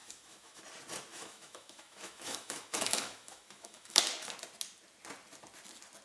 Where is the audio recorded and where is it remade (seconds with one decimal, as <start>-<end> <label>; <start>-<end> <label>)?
0.0-0.6 remade; 0.6-1.1 recorded; 1.1-4.0 remade; 4.0-6.0 recorded